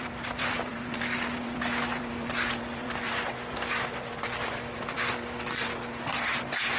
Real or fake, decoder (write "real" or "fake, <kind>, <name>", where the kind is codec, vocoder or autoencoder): fake, vocoder, BigVGAN v2